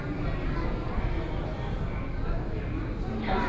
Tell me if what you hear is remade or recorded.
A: recorded